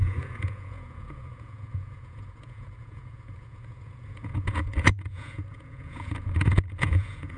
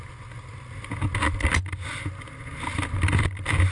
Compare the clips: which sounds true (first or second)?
second